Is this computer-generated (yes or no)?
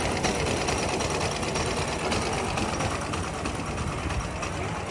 no